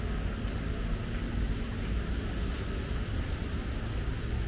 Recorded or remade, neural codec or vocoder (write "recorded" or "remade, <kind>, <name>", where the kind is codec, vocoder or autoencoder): recorded